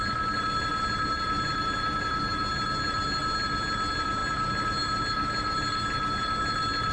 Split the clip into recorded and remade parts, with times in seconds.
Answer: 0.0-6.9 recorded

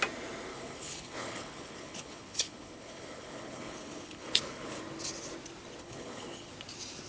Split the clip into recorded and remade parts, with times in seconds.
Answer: 0.0-0.5 recorded; 0.5-4.8 remade; 4.8-5.8 recorded; 5.8-6.5 remade; 6.5-7.1 recorded